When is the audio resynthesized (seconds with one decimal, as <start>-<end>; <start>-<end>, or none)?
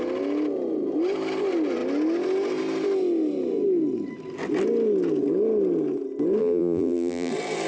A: 6.4-7.3